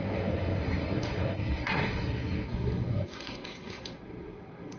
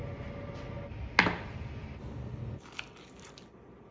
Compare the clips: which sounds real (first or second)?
second